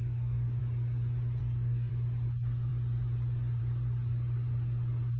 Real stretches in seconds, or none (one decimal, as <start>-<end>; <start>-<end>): 0.6-1.4; 1.9-5.2